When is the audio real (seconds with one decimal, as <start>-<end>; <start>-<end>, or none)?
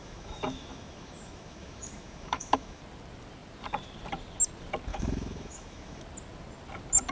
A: 2.8-4.9; 6.0-7.1